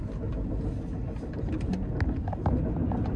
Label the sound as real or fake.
real